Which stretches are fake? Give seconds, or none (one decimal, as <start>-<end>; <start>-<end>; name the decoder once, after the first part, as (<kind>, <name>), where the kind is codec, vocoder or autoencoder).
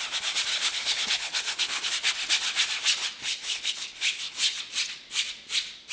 0.5-1.9 (codec, HILCodec); 3.2-4.6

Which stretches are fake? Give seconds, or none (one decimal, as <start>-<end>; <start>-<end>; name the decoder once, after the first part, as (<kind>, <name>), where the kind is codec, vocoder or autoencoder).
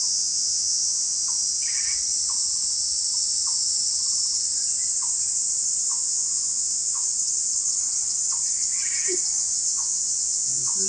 0.0-1.2 (vocoder, Vocos); 5.9-7.0; 9.4-10.9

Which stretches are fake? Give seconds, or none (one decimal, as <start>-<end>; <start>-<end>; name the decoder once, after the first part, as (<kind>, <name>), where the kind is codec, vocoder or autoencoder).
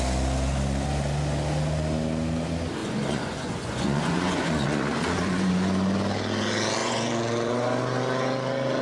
2.8-5.5 (vocoder, Vocos); 6.8-7.5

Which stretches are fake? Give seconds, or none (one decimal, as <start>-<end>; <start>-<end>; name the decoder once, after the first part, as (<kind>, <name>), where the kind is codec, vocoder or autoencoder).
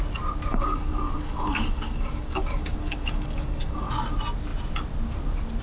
0.5-3.9 (codec, DAC)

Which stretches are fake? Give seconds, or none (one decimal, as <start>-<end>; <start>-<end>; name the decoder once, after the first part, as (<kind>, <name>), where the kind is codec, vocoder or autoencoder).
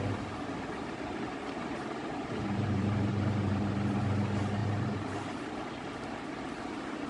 0.8-3.7 (vocoder, BigVGAN v2); 4.6-6.6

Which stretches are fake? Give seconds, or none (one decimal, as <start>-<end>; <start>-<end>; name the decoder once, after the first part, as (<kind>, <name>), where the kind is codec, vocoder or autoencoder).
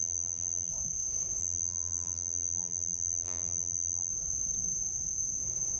0.0-0.7 (vocoder, BigVGAN v2); 1.4-4.1